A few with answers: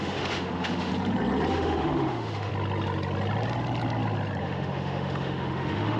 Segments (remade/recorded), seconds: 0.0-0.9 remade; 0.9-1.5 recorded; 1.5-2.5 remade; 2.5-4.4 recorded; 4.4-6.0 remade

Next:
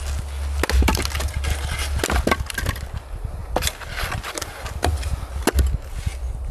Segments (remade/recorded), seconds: 0.0-6.5 recorded

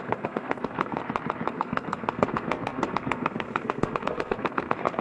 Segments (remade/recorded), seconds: 0.0-1.0 remade; 1.0-1.5 recorded; 1.5-5.0 remade

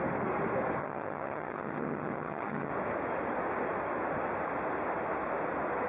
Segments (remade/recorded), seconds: 0.0-0.8 recorded; 0.8-2.7 remade; 2.7-5.9 recorded

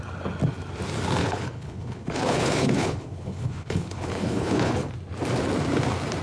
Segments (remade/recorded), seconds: 0.0-1.2 recorded; 1.2-4.9 remade; 4.9-6.2 recorded

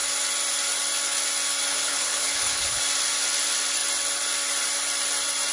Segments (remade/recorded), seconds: 0.0-1.7 recorded; 1.7-2.8 remade; 2.8-5.5 recorded